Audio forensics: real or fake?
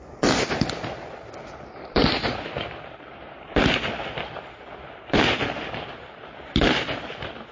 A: real